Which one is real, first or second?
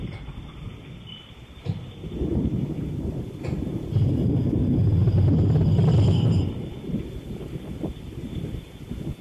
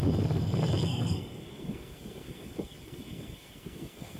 first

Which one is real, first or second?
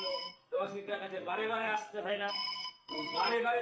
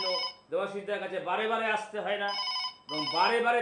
second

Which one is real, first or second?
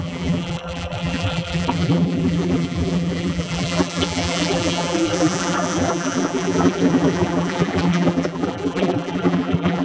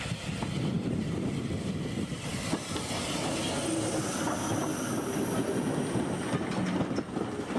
second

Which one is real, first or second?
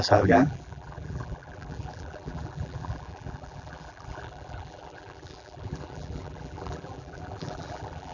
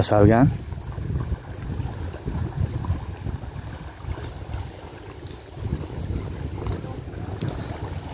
second